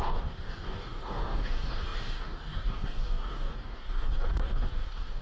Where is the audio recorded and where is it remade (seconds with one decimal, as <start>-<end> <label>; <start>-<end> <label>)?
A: 0.0-5.2 remade